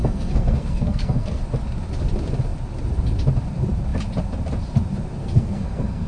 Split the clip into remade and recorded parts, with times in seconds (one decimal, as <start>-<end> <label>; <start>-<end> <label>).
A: 0.0-1.4 remade; 1.4-5.2 recorded; 5.2-6.1 remade